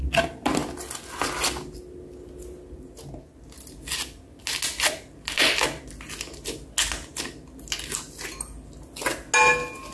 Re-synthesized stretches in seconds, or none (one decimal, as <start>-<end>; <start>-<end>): none